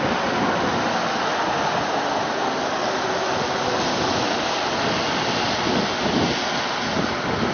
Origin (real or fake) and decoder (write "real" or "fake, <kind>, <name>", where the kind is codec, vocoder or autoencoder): real